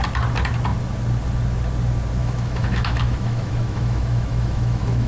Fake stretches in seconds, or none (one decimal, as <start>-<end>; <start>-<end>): 2.2-5.1